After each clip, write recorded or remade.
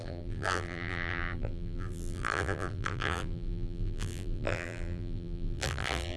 remade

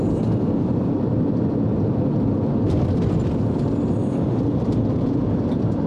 remade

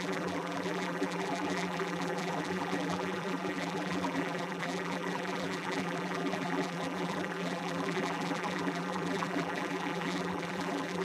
remade